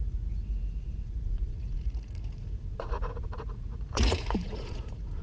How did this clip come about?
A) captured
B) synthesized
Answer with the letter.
B